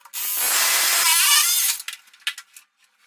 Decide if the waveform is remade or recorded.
recorded